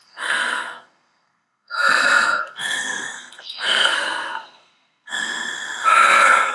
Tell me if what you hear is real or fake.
fake